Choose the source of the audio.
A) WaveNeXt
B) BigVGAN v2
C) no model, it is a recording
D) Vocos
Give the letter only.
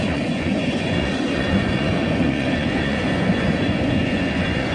D